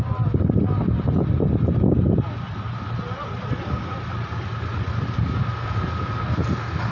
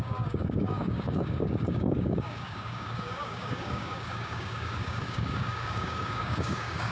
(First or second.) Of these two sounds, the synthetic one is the second